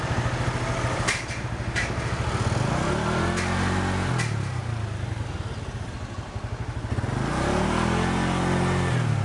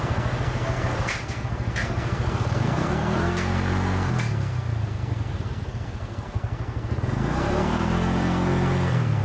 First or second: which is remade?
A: second